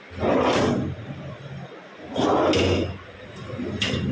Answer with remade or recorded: recorded